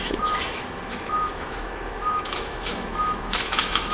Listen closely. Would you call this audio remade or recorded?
remade